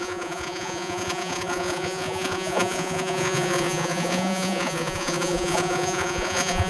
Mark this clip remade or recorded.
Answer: remade